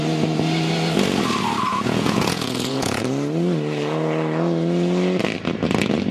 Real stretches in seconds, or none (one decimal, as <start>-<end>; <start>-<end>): 0.0-1.7; 3.0-6.1